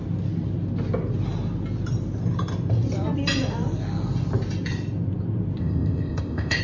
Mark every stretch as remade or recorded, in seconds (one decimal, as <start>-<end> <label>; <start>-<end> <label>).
0.0-5.6 recorded; 5.6-6.6 remade